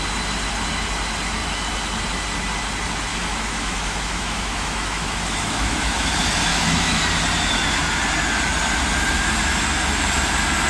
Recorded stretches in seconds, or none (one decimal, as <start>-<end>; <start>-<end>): 0.0-3.1; 6.1-6.5; 7.0-10.7